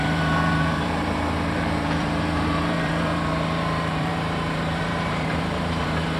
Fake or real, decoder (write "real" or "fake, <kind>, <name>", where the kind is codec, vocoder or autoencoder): fake, vocoder, BigVGAN v2